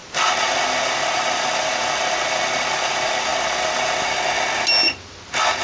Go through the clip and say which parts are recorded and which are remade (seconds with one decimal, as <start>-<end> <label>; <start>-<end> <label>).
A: 0.0-5.6 recorded